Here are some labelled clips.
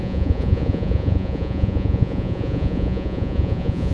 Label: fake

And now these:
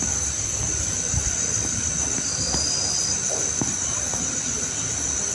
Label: real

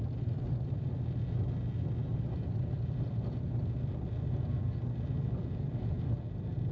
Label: real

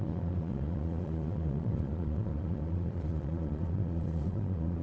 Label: fake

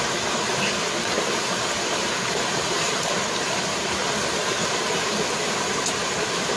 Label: fake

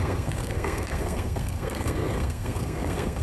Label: fake